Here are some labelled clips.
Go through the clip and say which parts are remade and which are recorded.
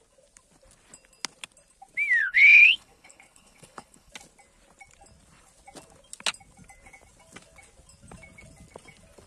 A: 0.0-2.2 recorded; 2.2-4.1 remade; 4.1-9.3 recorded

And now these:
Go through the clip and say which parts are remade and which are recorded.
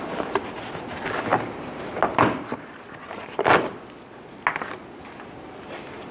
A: 0.0-6.1 recorded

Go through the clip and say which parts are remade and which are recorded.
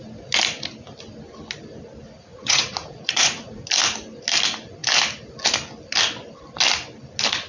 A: 0.0-2.3 recorded; 2.3-3.7 remade; 3.7-7.5 recorded